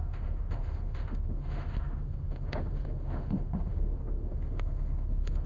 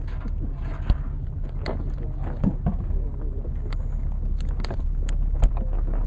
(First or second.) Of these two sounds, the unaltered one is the second